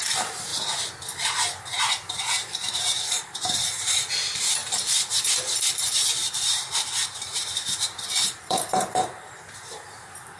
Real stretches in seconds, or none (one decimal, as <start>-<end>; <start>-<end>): 0.5-1.8; 4.6-5.1